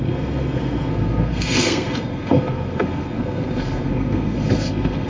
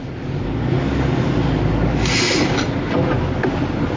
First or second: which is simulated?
first